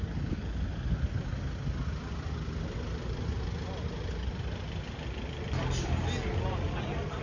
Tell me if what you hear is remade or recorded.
recorded